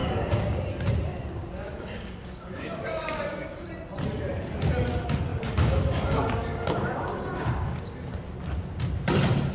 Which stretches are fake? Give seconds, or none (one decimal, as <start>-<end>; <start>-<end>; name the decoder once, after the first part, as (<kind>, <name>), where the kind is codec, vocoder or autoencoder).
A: 0.0-0.6 (codec, DAC); 1.4-3.7; 5.3-7.8